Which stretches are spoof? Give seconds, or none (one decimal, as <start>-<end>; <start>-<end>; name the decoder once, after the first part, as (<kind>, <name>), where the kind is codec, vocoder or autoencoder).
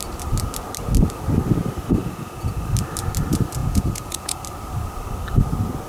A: 2.0-2.6 (vocoder, Vocos); 3.6-4.4